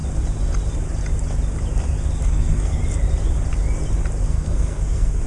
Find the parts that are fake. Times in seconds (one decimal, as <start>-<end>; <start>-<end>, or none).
2.2-2.8; 4.3-5.3

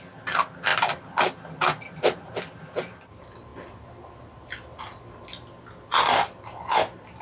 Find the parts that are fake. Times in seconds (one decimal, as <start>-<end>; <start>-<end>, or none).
none

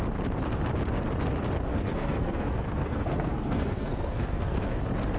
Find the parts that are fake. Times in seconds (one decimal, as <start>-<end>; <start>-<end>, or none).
1.7-4.8

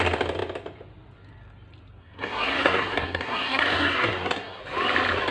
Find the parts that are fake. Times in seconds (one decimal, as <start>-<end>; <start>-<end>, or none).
2.0-4.6

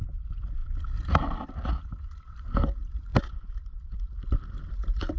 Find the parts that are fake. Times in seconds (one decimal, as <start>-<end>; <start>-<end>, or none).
none

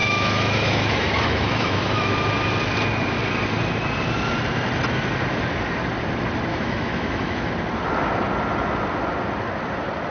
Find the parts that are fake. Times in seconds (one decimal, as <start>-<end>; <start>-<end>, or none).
0.0-2.1; 6.5-7.5

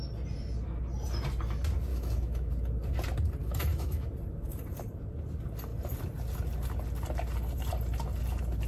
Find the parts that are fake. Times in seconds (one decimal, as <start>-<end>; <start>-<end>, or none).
1.9-2.5; 3.4-4.1

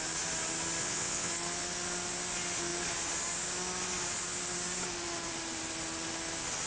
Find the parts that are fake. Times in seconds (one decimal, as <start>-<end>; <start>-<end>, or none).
0.8-1.3